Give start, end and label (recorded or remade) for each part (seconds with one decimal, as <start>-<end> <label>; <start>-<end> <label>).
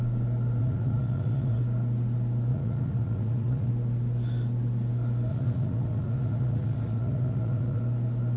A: 0.0-0.6 recorded; 0.6-1.6 remade; 1.6-2.5 recorded; 2.5-3.7 remade; 3.7-5.3 recorded; 5.3-7.8 remade; 7.8-8.4 recorded